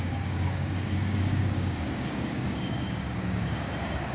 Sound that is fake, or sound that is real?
fake